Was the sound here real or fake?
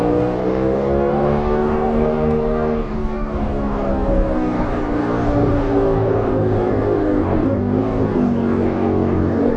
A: fake